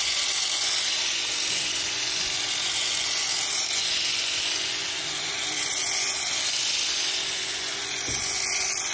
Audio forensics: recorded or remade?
remade